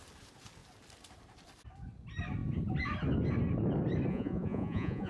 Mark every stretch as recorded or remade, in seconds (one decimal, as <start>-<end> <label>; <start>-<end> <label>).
0.0-4.1 recorded; 4.1-5.1 remade